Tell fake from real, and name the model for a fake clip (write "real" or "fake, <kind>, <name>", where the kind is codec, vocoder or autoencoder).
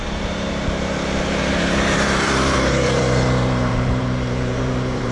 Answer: fake, vocoder, BigVGAN v2